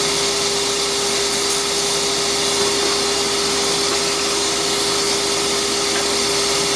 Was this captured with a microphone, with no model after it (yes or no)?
yes